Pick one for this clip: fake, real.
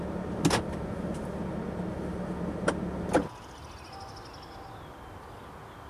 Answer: real